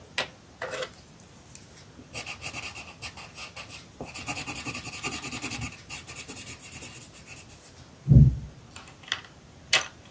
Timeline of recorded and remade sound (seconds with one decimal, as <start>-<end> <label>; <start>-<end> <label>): 0.0-3.4 recorded; 3.4-7.0 remade; 7.0-10.1 recorded